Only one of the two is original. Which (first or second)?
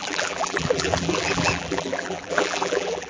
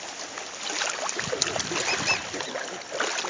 second